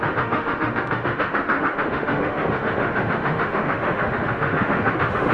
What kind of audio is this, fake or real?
fake